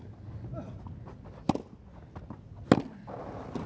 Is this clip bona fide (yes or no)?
yes